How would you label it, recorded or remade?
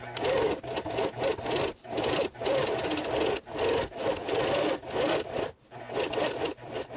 recorded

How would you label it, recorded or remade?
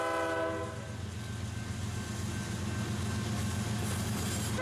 recorded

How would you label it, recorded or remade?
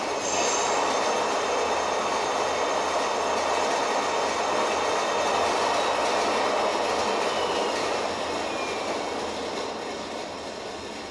recorded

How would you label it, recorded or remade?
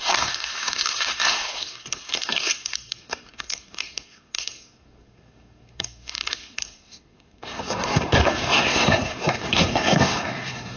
remade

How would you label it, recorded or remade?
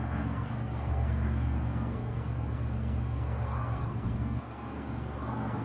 remade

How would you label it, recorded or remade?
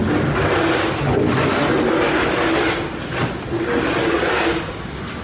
recorded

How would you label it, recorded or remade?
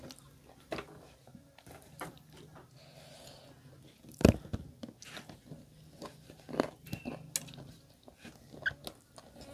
recorded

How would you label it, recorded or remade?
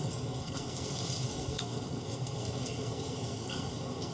remade